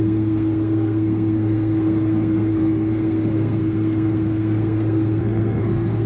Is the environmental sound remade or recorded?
remade